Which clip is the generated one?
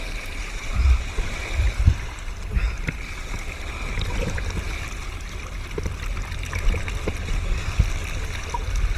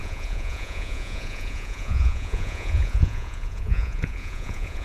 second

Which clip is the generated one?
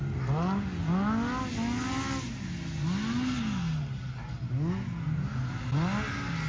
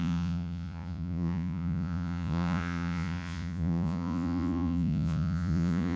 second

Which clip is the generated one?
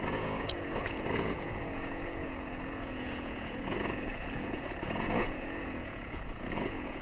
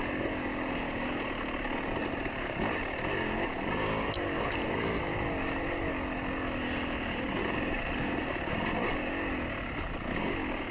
first